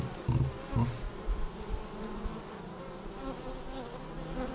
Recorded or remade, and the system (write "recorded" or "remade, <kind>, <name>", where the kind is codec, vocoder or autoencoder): recorded